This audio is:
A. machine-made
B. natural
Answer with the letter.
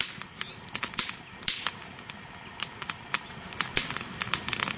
B